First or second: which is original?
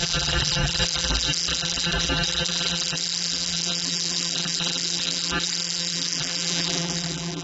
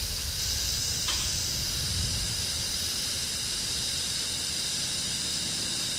second